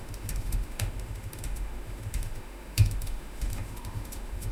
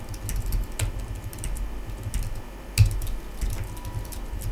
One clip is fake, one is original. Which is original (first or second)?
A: second